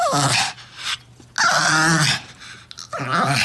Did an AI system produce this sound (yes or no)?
no